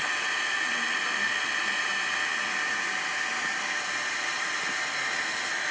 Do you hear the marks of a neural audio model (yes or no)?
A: no